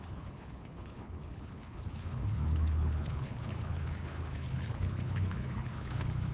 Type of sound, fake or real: fake